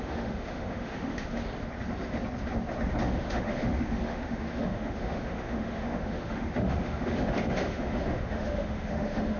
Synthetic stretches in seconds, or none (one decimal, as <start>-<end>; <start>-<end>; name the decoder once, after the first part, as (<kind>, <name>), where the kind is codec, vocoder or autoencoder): 0.0-1.4 (autoencoder, DAC-VAE); 3.0-9.4